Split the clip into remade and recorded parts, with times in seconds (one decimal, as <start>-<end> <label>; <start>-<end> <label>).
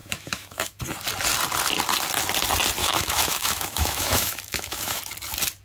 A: 0.0-0.8 remade; 0.8-2.8 recorded; 2.8-5.0 remade; 5.0-5.6 recorded